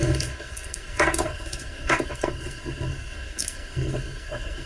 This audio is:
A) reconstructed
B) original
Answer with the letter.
A